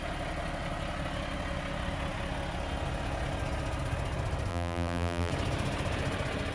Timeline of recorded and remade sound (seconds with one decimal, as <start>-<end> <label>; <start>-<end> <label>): 0.0-4.5 recorded; 4.5-5.3 remade; 5.3-6.5 recorded